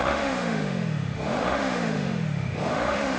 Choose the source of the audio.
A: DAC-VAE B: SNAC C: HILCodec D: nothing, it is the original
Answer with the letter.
A